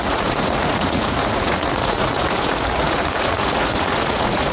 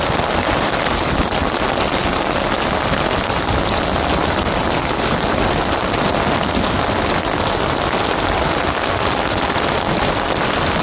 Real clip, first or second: second